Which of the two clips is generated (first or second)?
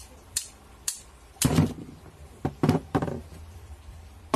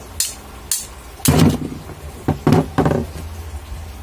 first